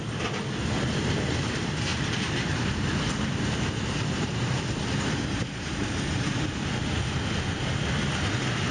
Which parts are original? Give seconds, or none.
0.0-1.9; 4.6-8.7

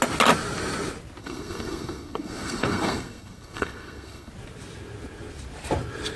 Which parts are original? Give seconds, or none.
0.0-1.2; 4.3-6.2

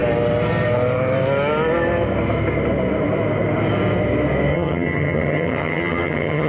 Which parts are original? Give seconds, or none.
0.0-4.5

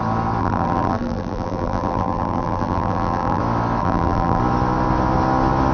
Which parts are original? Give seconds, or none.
0.0-0.4; 3.4-3.8; 4.4-5.7

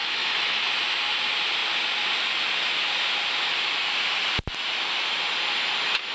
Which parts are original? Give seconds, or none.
0.7-6.1

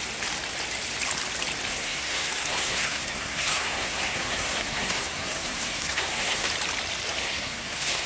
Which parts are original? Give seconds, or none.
0.0-1.7; 6.5-7.2